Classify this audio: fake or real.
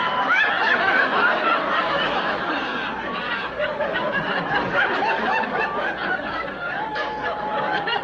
fake